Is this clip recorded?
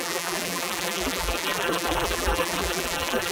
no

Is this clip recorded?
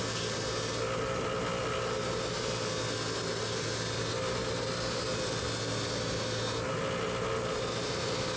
yes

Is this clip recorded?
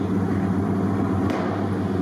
yes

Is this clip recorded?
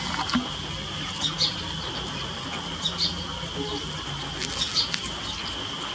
yes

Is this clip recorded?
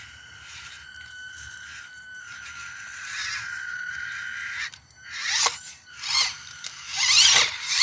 no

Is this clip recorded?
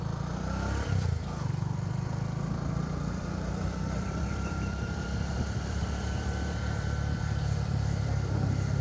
no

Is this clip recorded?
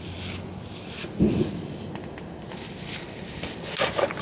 yes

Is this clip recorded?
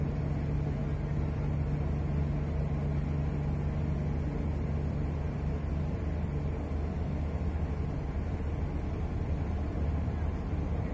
yes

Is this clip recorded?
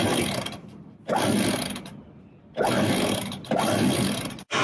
no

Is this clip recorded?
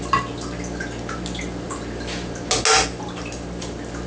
yes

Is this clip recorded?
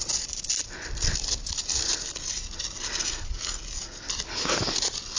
yes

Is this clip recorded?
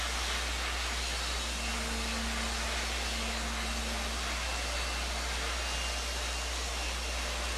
yes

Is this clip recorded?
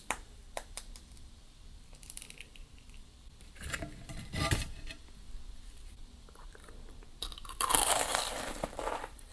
no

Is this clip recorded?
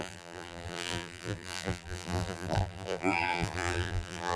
no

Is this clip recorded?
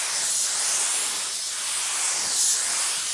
yes